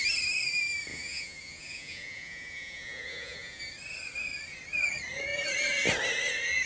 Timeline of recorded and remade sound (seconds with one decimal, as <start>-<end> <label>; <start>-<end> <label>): 0.0-0.9 recorded; 0.9-3.6 remade; 3.6-6.7 recorded